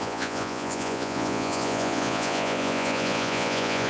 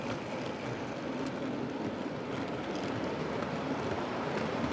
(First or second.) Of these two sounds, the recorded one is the second